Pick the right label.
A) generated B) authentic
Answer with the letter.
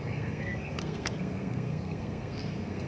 A